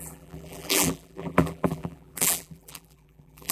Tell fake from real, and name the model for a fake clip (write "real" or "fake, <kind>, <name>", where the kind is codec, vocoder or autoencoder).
fake, vocoder, BigVGAN v2